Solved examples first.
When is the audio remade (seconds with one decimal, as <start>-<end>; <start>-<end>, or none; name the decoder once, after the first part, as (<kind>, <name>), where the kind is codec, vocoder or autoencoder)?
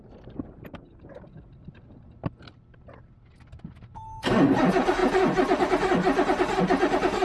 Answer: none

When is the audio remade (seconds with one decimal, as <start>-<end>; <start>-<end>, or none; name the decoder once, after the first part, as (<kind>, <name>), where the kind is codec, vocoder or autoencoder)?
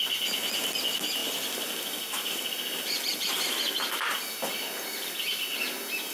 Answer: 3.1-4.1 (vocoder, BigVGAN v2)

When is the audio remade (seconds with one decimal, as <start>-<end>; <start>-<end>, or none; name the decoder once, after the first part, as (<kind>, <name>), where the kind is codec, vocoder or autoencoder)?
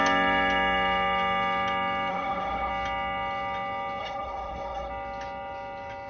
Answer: 2.1-2.7 (codec, HILCodec); 4.0-4.9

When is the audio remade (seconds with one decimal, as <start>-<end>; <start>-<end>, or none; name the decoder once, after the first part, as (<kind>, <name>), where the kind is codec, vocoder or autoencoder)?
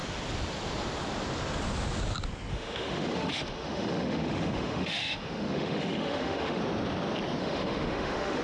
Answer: 2.5-6.6 (autoencoder, DAC-VAE); 7.4-8.4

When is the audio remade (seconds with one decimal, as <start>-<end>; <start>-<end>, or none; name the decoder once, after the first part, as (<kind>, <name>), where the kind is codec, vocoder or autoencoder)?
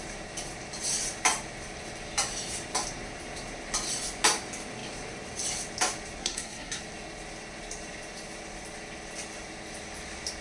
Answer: 6.2-6.8 (codec, SNAC)